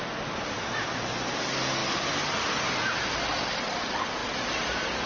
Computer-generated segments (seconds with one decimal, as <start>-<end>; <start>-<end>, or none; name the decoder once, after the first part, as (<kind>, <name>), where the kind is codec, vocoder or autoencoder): none